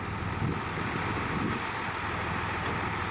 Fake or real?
real